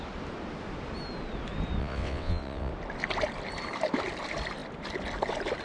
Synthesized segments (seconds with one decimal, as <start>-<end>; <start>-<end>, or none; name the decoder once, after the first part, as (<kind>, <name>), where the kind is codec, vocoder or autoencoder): 1.8-2.7 (vocoder, WaveNeXt)